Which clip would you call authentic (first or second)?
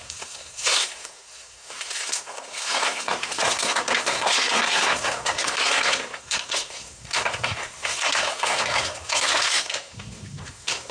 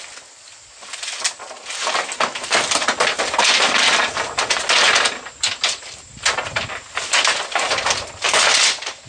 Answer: second